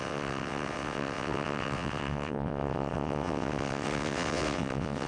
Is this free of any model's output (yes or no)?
no